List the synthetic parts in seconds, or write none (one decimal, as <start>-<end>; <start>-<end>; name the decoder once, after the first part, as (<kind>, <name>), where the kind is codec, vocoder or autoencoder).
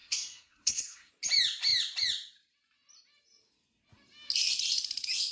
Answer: 0.0-1.1 (codec, SNAC)